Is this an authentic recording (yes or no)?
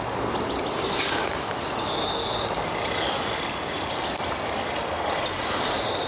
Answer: yes